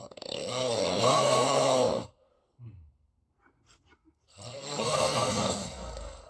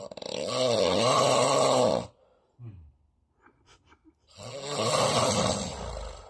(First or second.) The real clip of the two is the second